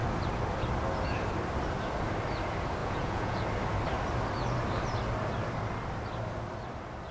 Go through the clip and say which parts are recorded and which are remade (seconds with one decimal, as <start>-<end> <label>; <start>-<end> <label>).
0.0-2.8 recorded; 2.8-3.4 remade; 3.4-7.1 recorded